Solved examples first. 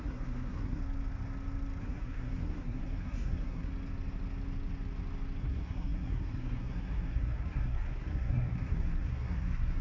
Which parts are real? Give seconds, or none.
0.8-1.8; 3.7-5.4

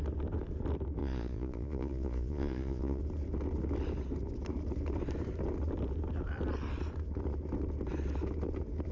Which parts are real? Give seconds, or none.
0.0-1.0; 3.0-8.9

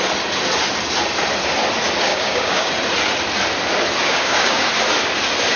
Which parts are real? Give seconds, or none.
0.0-2.1; 2.7-4.0; 4.7-5.6

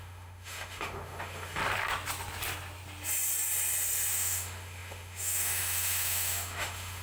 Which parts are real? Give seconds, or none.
1.6-4.1

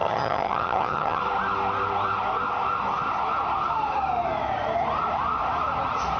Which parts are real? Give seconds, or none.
1.2-6.2

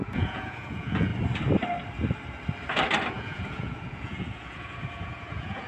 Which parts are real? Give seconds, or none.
1.1-3.1

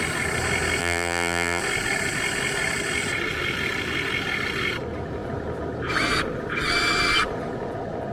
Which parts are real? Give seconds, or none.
0.0-0.8; 1.6-8.1

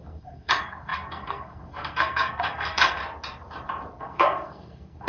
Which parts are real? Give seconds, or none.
3.0-4.0